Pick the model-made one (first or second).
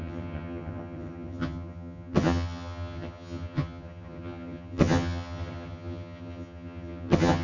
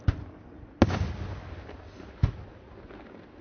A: first